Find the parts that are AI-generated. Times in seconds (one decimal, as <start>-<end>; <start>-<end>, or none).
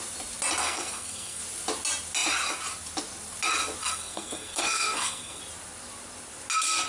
0.6-1.4; 3.8-5.4